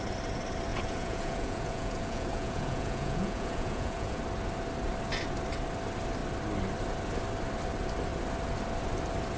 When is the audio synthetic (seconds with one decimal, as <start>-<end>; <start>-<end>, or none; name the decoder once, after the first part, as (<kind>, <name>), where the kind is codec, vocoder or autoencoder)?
0.7-4.2 (vocoder, Vocos)